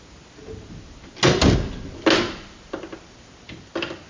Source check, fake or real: real